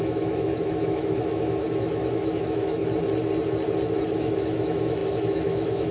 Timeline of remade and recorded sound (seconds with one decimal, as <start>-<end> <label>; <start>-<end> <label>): 0.0-2.8 remade; 2.8-4.0 recorded; 4.0-5.9 remade